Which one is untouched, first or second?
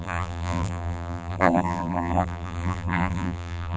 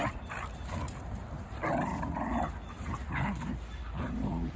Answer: second